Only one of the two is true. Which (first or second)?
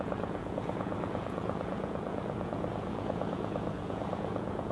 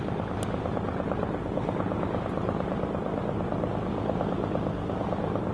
second